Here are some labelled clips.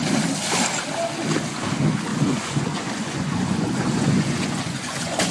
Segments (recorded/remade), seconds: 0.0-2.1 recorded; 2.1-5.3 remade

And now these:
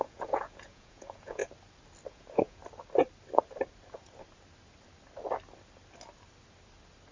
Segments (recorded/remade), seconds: 0.0-1.4 remade; 1.4-2.1 recorded; 2.1-2.6 remade; 2.6-7.1 recorded

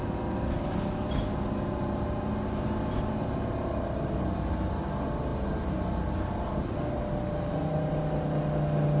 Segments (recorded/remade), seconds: 0.0-9.0 recorded

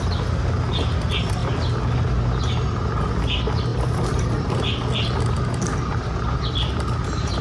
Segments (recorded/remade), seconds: 0.0-7.4 recorded